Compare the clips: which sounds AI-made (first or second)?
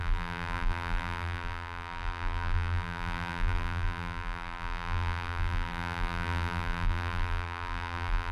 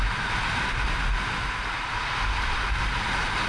first